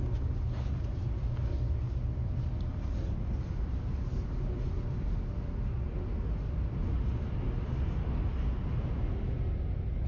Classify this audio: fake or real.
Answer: real